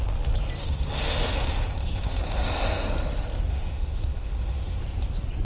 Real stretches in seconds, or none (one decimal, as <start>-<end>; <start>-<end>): 0.0-0.6; 2.4-3.5; 4.8-5.4